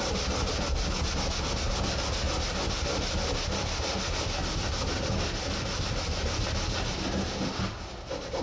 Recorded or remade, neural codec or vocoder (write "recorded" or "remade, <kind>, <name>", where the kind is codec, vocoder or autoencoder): recorded